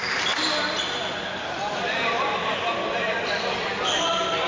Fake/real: fake